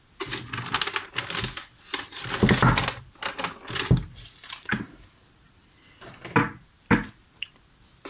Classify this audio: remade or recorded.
recorded